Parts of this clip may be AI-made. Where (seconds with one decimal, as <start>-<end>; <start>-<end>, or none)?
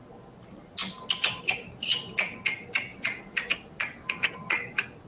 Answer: none